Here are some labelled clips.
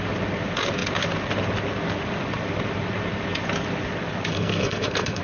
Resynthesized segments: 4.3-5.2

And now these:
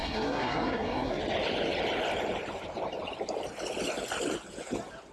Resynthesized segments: 0.0-1.2